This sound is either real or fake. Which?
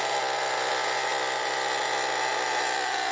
real